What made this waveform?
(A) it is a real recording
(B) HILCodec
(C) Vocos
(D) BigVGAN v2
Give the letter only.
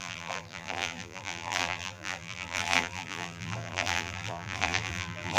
D